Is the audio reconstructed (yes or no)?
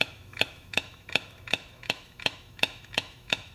yes